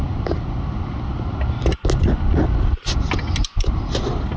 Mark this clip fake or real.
real